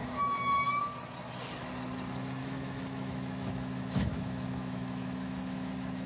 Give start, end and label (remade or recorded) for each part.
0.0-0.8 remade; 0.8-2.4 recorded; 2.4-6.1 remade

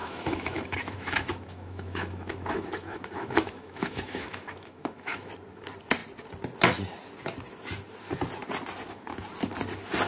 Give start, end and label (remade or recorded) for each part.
0.0-5.3 remade; 5.3-10.1 recorded

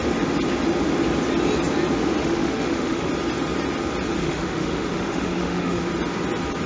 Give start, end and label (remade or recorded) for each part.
0.0-2.2 recorded; 2.2-3.1 remade; 3.1-4.2 recorded; 4.2-5.8 remade; 5.8-6.7 recorded